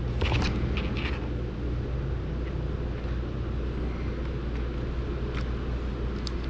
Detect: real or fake real